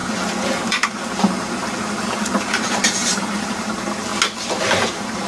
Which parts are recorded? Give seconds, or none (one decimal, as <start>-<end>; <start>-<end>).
0.0-0.6; 4.1-4.6